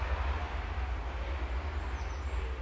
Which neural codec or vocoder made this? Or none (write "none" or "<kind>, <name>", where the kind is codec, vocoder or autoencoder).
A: none